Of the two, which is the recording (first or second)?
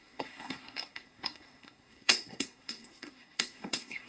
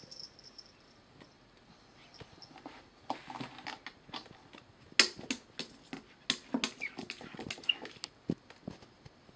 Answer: second